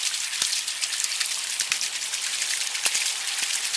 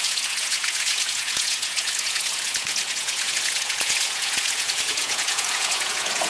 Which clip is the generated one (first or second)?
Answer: second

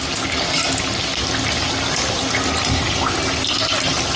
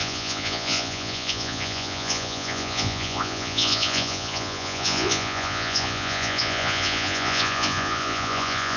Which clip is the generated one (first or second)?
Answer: second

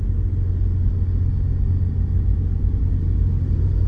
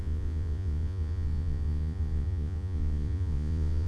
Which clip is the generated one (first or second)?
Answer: second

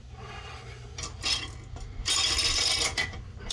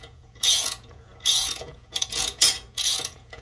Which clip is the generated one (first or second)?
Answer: second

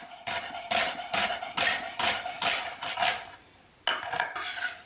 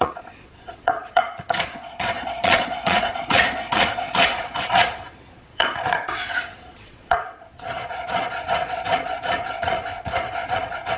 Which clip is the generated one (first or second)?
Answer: second